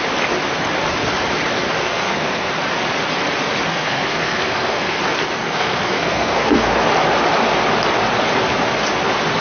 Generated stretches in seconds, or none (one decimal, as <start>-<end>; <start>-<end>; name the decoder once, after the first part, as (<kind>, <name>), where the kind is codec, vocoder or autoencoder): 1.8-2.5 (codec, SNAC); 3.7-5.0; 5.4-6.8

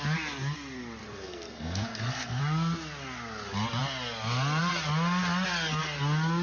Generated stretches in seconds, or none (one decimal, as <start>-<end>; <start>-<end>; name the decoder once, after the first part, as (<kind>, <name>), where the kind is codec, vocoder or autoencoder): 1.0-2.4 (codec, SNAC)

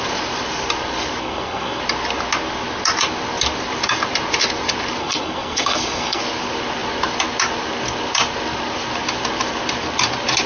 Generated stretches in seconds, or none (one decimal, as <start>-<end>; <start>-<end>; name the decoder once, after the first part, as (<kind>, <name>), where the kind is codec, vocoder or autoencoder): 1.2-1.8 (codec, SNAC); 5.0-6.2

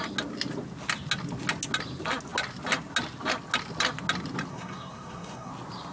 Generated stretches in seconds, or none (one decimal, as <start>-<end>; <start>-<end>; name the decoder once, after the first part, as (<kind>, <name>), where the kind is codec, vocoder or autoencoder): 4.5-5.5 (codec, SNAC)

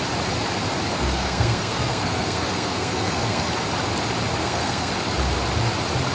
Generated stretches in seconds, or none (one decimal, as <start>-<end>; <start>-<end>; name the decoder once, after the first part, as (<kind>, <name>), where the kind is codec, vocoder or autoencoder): 0.9-3.5 (codec, SNAC); 4.4-4.9

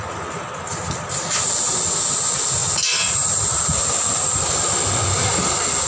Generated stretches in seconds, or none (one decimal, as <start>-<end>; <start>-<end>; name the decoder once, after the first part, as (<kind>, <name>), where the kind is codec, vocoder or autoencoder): none